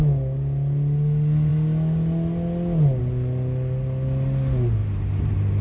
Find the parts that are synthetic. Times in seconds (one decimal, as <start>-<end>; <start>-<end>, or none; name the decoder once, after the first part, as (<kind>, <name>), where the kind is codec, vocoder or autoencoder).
none